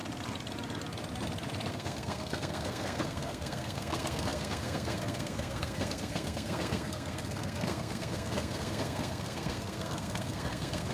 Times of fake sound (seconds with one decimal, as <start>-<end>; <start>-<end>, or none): 1.7-10.9